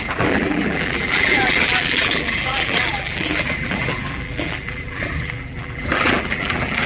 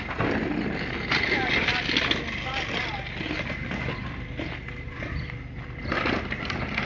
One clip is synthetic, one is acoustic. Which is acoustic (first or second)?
second